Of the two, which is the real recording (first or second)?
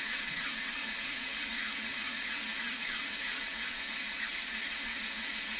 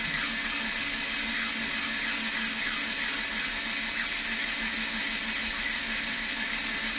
second